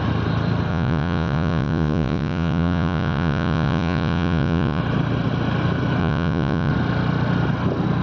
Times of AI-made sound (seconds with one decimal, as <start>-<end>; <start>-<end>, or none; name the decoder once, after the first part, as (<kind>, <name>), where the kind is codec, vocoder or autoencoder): 0.7-4.8 (vocoder, Vocos); 6.0-6.7